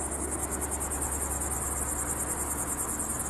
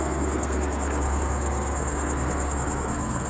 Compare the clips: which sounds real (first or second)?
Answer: first